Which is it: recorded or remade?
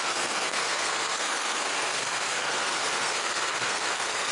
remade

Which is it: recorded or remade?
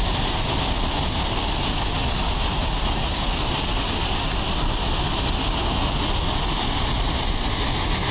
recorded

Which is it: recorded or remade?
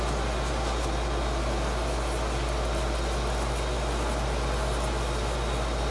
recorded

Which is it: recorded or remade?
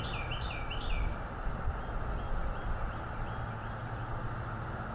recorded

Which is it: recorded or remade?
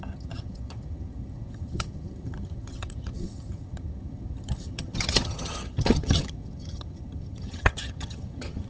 remade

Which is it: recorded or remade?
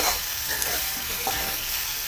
remade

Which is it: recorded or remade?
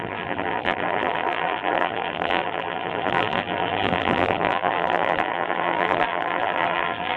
remade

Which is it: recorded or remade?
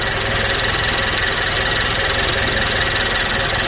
recorded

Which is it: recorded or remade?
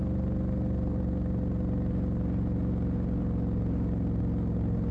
recorded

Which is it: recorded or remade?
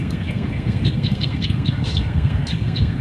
remade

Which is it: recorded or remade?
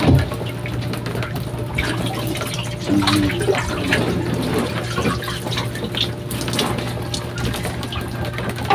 recorded